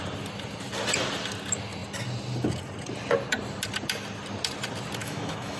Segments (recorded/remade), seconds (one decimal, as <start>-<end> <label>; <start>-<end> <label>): 0.0-5.0 recorded; 5.0-5.6 remade